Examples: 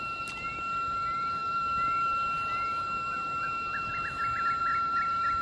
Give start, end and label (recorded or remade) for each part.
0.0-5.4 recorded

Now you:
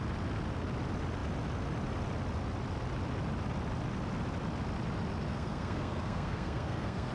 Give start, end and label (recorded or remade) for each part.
0.0-5.3 recorded; 5.3-7.1 remade

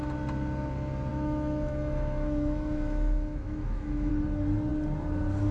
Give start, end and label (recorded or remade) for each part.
0.0-1.1 recorded; 1.1-4.1 remade; 4.1-5.5 recorded